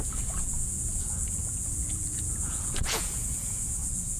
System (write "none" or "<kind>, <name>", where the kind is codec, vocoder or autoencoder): vocoder, Vocos